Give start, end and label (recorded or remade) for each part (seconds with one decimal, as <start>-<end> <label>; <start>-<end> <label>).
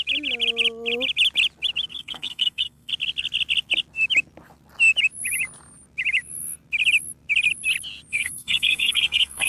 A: 0.0-1.9 recorded; 1.9-2.9 remade; 2.9-8.1 recorded; 8.1-9.5 remade